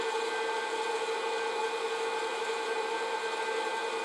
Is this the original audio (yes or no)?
yes